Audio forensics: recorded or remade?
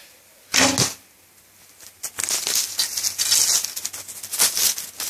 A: recorded